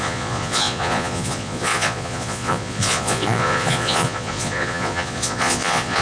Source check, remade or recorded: remade